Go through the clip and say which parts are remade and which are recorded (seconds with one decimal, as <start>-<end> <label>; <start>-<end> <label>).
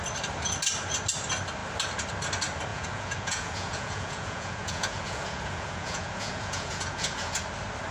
0.0-2.7 recorded; 2.7-7.4 remade; 7.4-7.9 recorded